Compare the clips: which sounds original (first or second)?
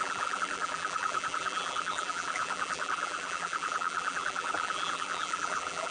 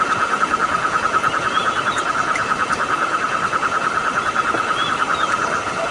second